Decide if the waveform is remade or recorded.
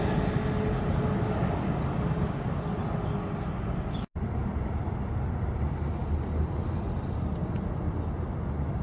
recorded